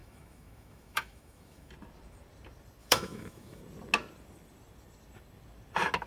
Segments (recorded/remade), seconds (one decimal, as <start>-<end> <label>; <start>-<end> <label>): 0.0-1.7 remade; 1.7-2.8 recorded; 2.8-3.6 remade; 3.6-6.1 recorded